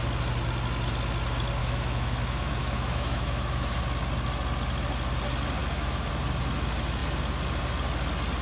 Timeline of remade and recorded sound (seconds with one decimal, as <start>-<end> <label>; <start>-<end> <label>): 0.0-1.6 recorded; 1.6-3.8 remade; 3.8-5.6 recorded; 5.6-6.1 remade; 6.1-8.4 recorded